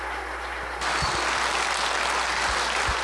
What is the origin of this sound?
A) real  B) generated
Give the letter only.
A